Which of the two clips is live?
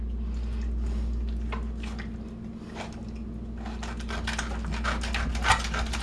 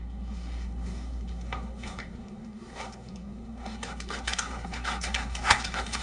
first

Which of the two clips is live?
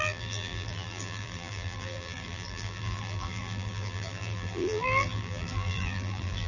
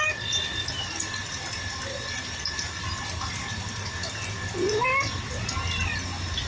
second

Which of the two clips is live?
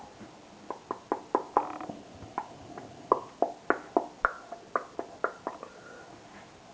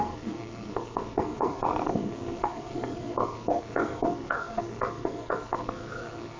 first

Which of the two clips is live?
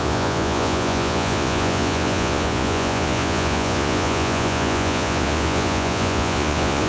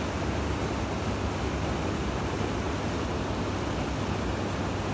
second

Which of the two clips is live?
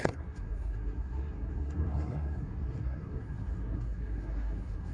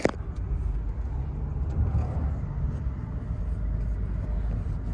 second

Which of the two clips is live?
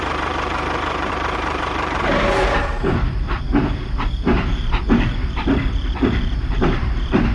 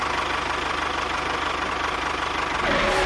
second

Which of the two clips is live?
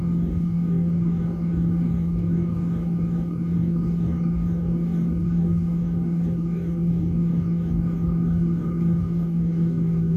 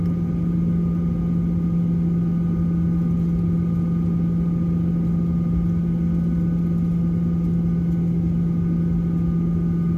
second